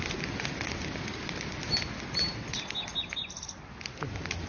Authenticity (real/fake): real